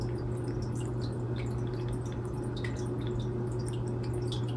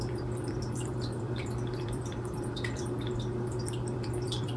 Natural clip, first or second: first